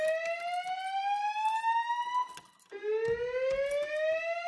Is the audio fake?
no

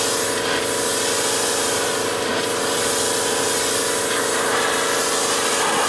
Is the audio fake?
no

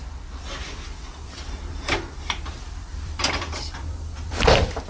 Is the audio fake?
yes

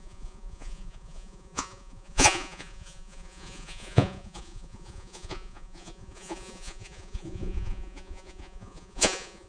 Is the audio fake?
yes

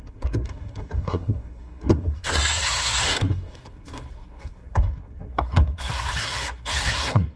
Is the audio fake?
yes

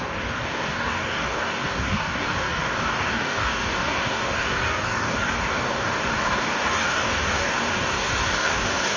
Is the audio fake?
yes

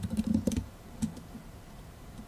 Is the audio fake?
yes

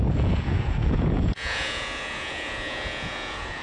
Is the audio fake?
yes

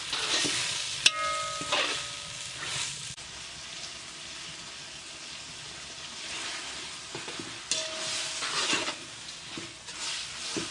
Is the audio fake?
no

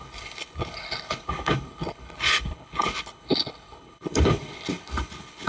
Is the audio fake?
yes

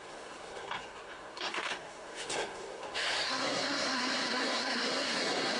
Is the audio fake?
yes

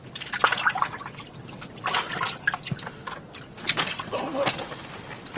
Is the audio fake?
no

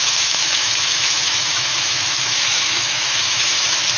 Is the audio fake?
yes